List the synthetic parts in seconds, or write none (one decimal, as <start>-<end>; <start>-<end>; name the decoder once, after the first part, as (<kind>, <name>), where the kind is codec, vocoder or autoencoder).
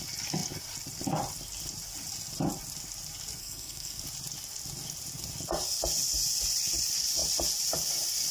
3.4-4.0 (codec, SNAC)